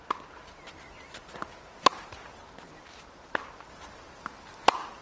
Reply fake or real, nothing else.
real